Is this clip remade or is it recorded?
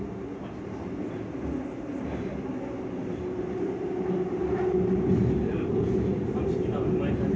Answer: recorded